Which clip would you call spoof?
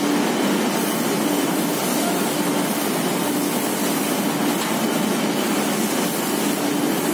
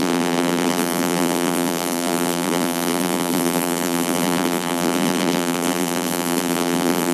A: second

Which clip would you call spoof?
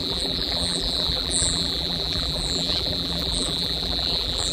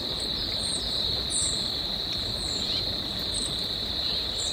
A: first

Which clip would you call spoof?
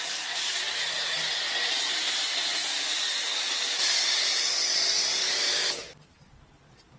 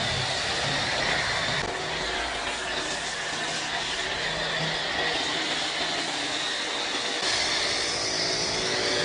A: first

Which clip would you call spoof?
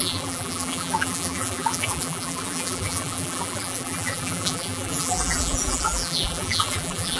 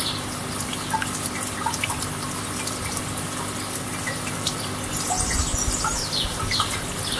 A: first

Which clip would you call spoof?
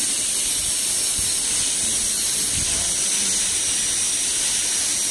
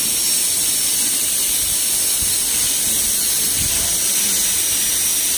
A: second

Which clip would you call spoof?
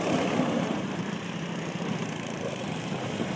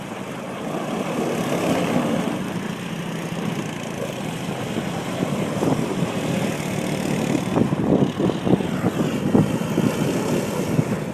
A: first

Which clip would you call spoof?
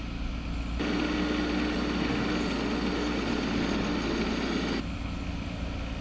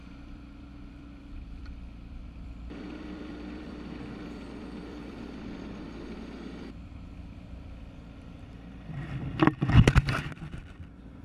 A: second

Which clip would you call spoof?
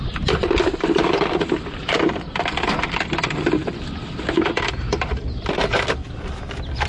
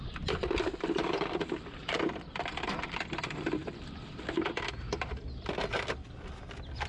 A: first